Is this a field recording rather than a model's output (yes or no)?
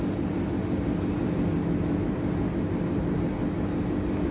yes